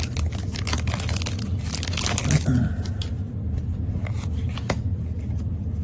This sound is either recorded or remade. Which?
recorded